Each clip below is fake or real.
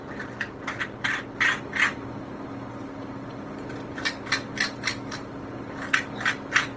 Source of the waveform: real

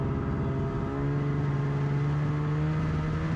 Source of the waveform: real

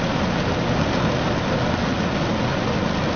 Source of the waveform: real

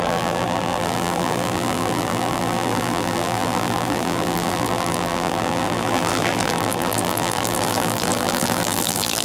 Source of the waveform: fake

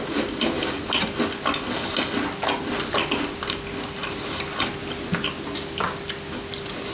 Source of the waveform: real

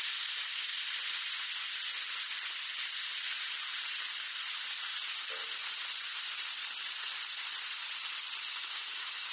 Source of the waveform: real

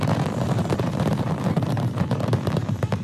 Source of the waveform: fake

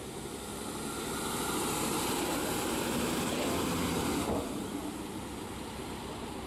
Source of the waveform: real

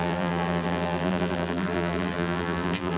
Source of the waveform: fake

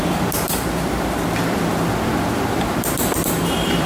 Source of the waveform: fake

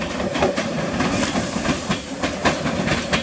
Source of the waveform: fake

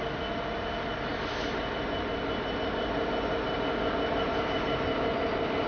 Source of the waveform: real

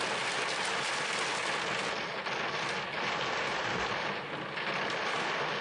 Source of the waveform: real